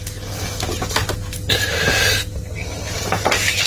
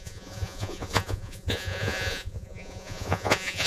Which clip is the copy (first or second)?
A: second